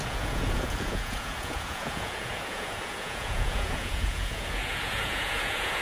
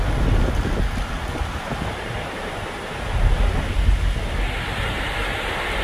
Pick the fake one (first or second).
first